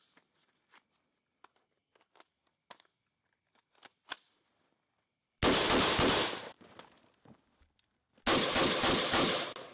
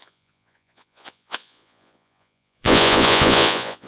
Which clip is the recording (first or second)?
first